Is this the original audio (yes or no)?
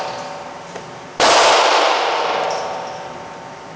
yes